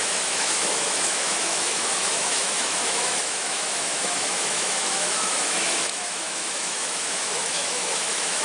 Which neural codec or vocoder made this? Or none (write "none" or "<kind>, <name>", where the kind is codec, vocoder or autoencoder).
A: autoencoder, DAC-VAE